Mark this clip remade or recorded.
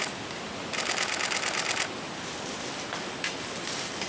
recorded